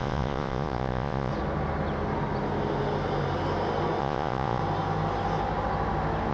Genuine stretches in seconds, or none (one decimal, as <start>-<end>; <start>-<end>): 1.3-4.0; 4.6-6.3